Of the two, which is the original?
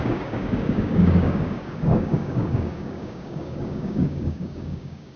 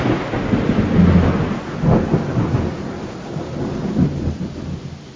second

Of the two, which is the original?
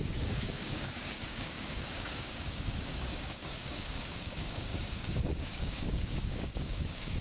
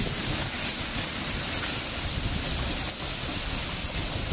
second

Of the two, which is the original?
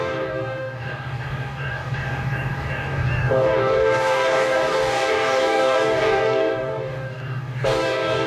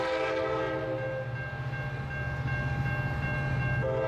second